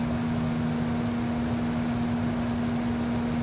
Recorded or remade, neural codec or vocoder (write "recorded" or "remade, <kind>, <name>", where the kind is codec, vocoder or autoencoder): recorded